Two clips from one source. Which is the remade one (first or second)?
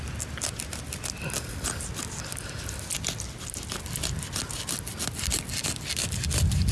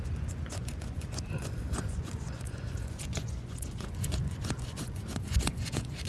second